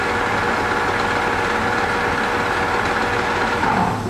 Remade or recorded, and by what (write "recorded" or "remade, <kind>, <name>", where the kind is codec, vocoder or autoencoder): recorded